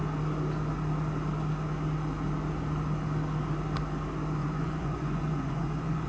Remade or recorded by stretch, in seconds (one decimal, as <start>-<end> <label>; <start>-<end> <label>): 0.0-4.4 recorded; 4.4-6.1 remade